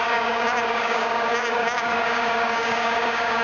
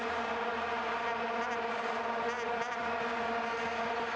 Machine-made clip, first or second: first